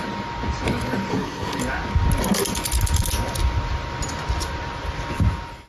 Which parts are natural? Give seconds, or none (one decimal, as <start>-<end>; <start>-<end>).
0.0-1.1; 1.6-5.7